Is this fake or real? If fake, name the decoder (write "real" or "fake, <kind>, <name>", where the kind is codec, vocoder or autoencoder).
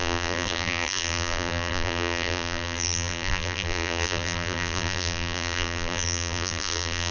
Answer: fake, vocoder, BigVGAN v2